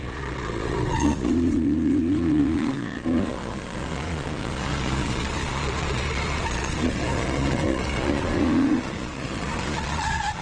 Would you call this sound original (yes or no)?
no